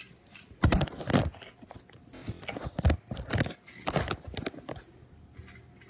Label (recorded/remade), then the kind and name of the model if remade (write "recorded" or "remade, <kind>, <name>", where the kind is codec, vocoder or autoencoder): recorded